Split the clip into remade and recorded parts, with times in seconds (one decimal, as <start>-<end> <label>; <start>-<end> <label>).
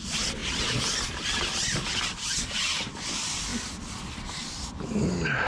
0.0-5.5 recorded